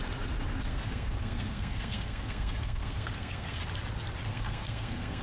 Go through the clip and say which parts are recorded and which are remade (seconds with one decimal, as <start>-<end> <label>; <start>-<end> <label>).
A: 0.0-0.7 recorded; 0.7-3.6 remade; 3.6-4.3 recorded; 4.3-5.2 remade